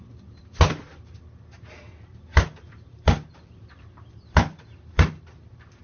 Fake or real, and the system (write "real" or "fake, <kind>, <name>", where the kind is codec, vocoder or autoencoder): fake, vocoder, BigVGAN v2